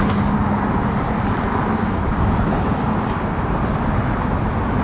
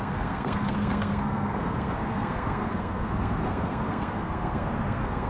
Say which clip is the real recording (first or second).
first